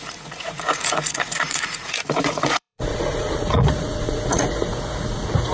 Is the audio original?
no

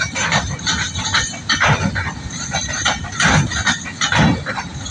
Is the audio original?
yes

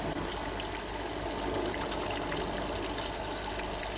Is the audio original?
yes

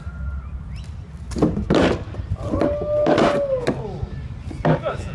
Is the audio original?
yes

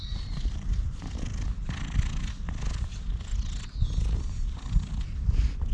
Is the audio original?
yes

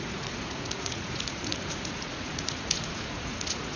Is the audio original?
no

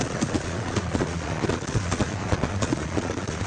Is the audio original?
no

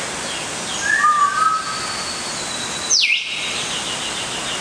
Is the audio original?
yes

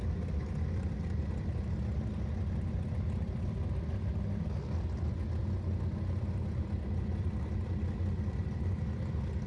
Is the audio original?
yes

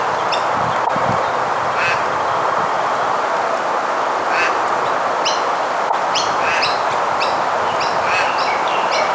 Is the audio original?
yes